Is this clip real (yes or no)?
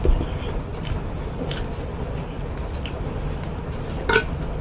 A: yes